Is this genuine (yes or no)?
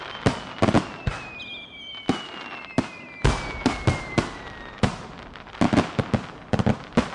yes